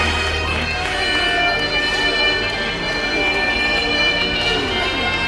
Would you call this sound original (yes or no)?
yes